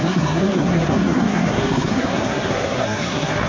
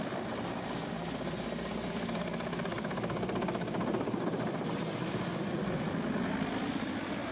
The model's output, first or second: first